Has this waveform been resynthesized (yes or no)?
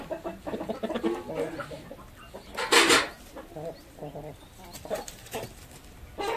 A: no